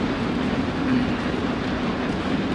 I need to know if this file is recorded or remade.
recorded